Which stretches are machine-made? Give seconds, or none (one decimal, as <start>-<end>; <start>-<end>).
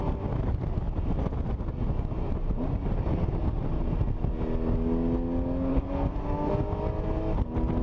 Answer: 5.7-6.5